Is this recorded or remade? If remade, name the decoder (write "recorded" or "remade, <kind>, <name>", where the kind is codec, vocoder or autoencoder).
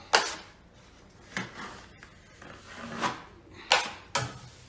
recorded